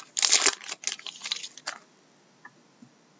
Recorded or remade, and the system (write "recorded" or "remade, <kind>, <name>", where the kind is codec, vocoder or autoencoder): recorded